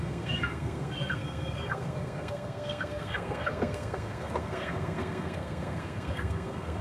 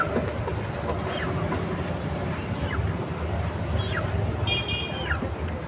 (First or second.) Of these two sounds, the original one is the second